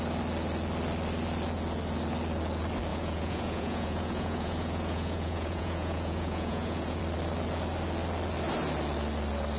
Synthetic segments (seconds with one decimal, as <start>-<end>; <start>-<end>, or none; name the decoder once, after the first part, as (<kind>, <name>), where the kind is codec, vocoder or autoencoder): 2.9-7.0 (vocoder, Vocos)